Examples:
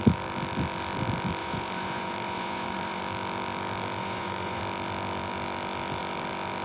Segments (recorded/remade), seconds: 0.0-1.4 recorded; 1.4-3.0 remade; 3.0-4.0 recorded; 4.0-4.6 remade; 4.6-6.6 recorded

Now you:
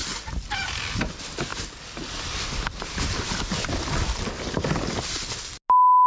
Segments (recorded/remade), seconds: 0.0-6.1 recorded

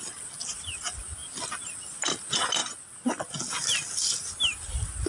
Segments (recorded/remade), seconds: 0.0-5.1 recorded

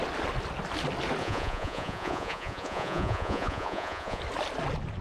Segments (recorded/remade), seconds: 0.0-1.2 recorded; 1.2-4.2 remade; 4.2-5.0 recorded

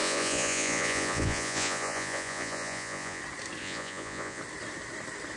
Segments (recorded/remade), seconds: 0.0-3.2 remade; 3.2-3.6 recorded; 3.6-4.4 remade; 4.4-5.4 recorded

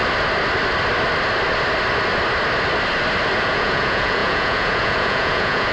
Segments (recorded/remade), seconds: 0.0-3.4 recorded; 3.4-5.7 remade

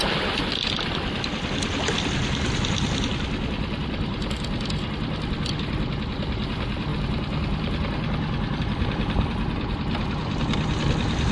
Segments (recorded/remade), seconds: 0.0-11.3 recorded

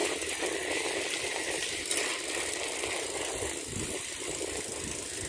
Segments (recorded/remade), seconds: 0.0-5.3 recorded